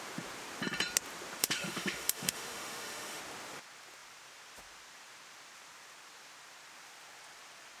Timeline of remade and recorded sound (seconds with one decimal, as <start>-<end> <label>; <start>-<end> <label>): 0.0-1.4 recorded; 1.4-3.2 remade; 3.2-7.8 recorded